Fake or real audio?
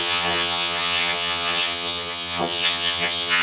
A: fake